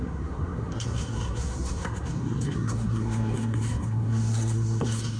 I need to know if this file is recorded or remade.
remade